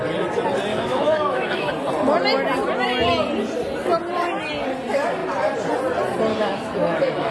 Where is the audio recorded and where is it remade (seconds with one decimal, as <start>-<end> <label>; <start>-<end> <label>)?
0.0-0.7 recorded; 0.7-1.7 remade; 1.7-6.3 recorded; 6.3-7.3 remade